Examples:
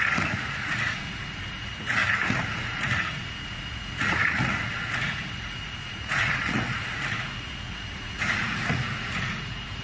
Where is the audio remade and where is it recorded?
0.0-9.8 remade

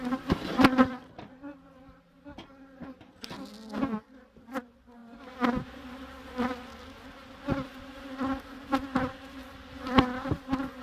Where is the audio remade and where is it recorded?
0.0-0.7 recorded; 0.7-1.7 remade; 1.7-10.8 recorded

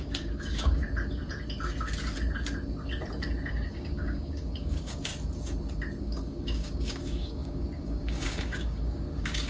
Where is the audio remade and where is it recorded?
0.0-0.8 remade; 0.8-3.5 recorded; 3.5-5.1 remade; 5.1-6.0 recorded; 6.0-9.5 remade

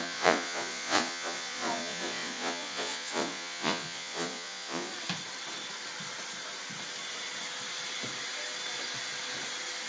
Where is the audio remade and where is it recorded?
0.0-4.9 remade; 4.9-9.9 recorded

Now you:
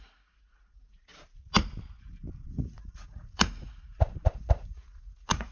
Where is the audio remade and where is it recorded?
0.0-1.1 remade; 1.1-2.5 recorded; 2.5-5.5 remade

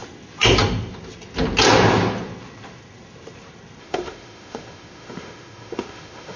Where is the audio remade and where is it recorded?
0.0-3.8 recorded; 3.8-6.4 remade